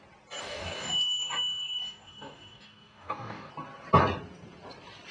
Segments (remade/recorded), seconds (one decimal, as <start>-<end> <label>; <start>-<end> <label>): 0.0-0.4 recorded; 0.4-3.5 remade; 3.5-5.1 recorded